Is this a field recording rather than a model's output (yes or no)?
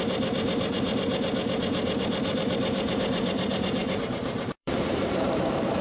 no